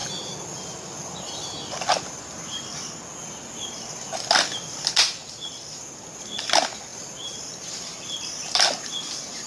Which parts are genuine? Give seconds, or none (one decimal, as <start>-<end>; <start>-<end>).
0.0-9.5